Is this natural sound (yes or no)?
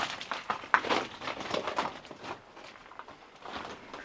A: no